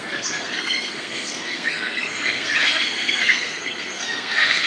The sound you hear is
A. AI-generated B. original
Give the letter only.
A